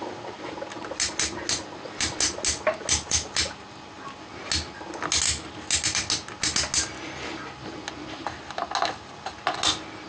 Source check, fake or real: real